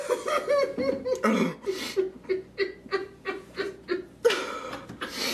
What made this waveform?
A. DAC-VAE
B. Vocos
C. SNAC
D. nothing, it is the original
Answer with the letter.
D